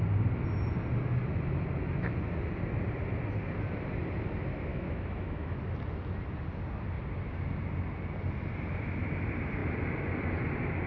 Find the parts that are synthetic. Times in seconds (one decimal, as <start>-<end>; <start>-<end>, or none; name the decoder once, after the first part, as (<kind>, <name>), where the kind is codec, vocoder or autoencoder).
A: 4.7-5.6 (autoencoder, DAC-VAE)